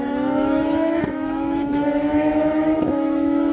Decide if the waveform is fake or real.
fake